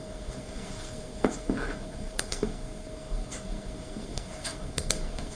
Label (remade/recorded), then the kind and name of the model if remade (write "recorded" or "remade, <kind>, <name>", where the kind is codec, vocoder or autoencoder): remade, codec, SNAC